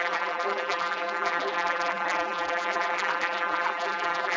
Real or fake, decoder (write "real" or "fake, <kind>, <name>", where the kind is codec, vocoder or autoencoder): fake, vocoder, BigVGAN v2